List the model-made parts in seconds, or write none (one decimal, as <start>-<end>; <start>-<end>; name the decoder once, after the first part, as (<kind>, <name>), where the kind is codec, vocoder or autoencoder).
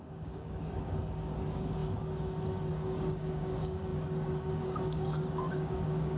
0.0-6.2 (codec, DAC)